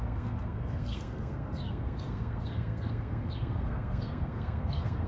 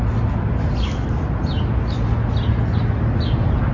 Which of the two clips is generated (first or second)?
first